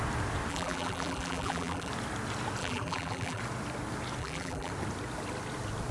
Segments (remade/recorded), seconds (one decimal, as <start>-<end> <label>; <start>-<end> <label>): 0.0-0.5 recorded; 0.5-1.9 remade; 1.9-2.6 recorded; 2.6-3.4 remade; 3.4-4.2 recorded; 4.2-4.7 remade; 4.7-5.9 recorded